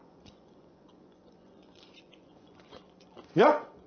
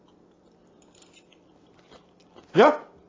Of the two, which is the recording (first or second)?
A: second